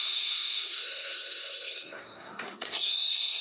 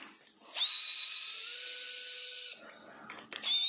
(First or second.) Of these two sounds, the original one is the second